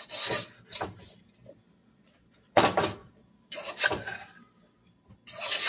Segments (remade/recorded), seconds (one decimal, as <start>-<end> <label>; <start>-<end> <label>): 0.0-1.8 recorded; 1.8-2.6 remade; 2.6-3.0 recorded; 3.0-3.7 remade; 3.7-5.7 recorded